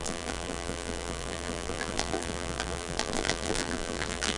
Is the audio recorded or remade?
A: remade